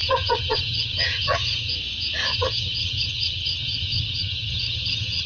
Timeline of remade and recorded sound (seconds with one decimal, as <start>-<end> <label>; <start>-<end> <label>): 0.0-1.7 remade; 1.7-2.3 recorded; 2.3-5.3 remade